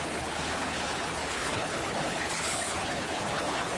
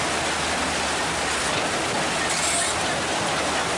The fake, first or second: first